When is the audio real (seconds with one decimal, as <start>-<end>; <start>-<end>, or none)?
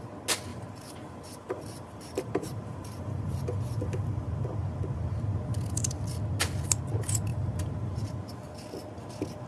0.0-0.5; 3.2-7.3; 8.1-9.5